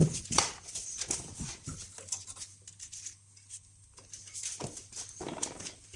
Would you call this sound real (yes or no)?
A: yes